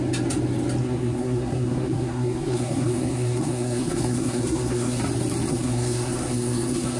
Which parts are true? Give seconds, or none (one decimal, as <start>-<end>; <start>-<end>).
0.0-0.8; 5.0-5.5